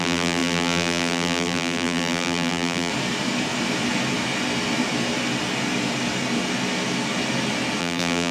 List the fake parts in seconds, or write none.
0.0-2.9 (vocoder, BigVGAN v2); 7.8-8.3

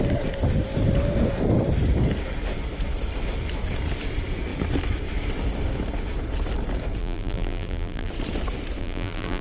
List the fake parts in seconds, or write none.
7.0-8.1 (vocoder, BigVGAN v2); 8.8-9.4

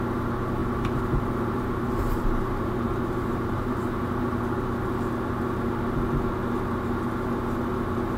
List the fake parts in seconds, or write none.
0.6-4.4 (vocoder, BigVGAN v2)